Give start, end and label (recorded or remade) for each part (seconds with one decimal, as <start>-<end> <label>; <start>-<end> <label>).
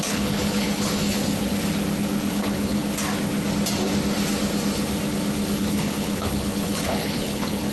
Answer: 0.0-1.4 remade; 1.4-2.3 recorded; 2.3-2.8 remade; 2.8-5.6 recorded; 5.6-7.7 remade